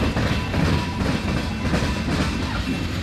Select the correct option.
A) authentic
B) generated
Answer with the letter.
A